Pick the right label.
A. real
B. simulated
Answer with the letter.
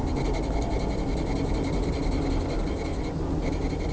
A